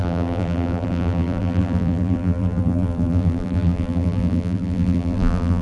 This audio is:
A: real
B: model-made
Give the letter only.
B